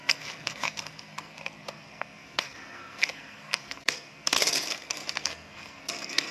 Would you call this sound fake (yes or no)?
yes